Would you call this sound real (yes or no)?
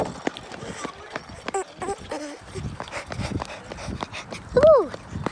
yes